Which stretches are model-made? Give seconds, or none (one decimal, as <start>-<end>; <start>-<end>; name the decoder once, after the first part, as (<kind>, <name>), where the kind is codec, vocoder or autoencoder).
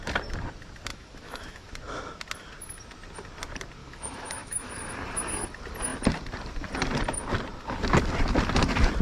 0.9-1.7 (autoencoder, DAC-VAE); 3.8-4.7